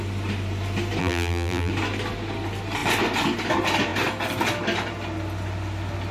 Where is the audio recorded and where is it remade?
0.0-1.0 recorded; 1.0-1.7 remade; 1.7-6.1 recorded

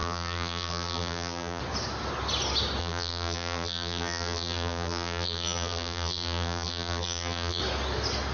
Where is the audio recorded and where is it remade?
0.0-1.6 remade; 1.6-2.8 recorded; 2.8-7.6 remade; 7.6-8.3 recorded

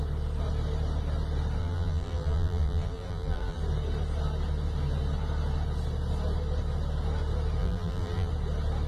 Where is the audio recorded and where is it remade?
0.0-1.6 recorded; 1.6-3.6 remade; 3.6-7.6 recorded; 7.6-8.3 remade; 8.3-8.9 recorded

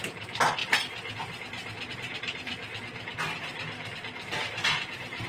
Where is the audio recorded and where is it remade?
0.0-5.3 recorded

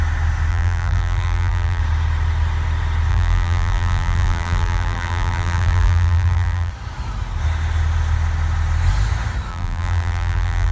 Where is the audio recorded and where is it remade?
0.0-0.5 recorded; 0.5-1.8 remade; 1.8-3.1 recorded; 3.1-6.7 remade; 6.7-9.5 recorded; 9.5-10.7 remade

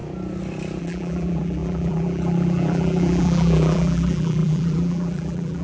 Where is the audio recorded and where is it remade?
0.0-0.8 recorded; 0.8-5.6 remade